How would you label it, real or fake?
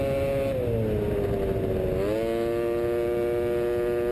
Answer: real